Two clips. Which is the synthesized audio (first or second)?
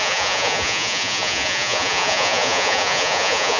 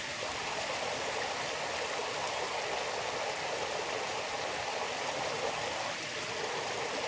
first